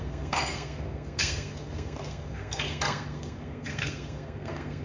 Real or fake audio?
fake